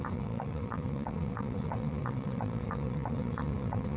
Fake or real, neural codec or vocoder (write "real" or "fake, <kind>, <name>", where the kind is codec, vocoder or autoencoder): fake, vocoder, WaveNeXt